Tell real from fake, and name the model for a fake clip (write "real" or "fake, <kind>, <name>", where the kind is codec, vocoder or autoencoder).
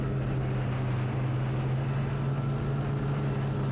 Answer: real